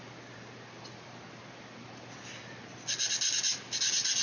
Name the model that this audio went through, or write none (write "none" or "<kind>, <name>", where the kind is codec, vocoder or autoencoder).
none